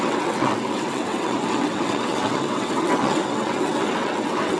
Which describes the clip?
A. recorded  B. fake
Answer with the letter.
B